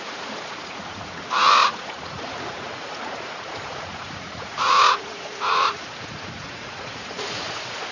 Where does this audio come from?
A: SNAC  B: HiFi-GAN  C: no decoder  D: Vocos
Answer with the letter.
D